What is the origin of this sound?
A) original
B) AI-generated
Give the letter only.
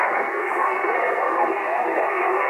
B